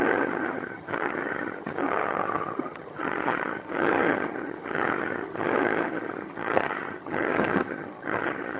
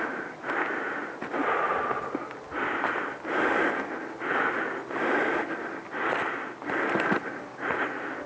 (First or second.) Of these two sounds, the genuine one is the second